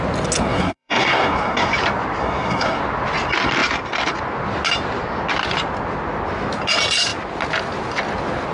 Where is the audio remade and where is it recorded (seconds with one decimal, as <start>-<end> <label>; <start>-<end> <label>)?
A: 0.0-0.4 recorded; 0.4-1.7 remade; 1.7-2.2 recorded; 2.2-2.8 remade; 2.8-8.5 recorded